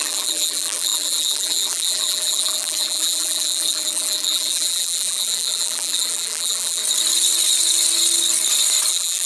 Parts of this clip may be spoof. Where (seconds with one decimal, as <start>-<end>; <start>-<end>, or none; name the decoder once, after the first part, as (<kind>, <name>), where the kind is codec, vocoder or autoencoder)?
0.0-6.8 (vocoder, BigVGAN v2); 8.9-9.3